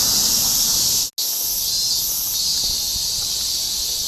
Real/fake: real